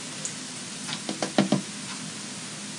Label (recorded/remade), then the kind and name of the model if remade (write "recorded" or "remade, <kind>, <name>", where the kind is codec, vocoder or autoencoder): recorded